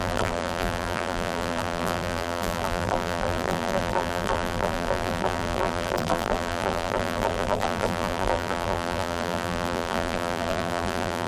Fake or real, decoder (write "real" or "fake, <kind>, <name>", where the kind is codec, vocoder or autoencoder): fake, vocoder, BigVGAN v2